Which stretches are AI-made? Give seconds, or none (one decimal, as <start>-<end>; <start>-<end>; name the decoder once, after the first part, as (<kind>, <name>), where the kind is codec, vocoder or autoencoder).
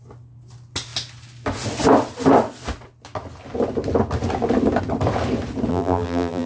5.7-6.5 (vocoder, BigVGAN v2)